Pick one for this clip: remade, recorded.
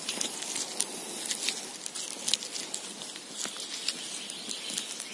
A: recorded